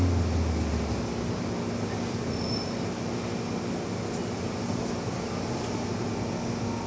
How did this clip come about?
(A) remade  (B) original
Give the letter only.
B